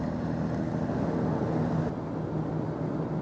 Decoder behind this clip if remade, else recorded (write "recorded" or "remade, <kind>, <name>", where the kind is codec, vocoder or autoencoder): recorded